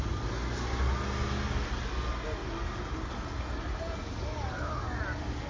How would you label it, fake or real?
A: real